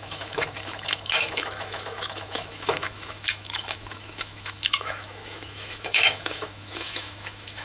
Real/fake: fake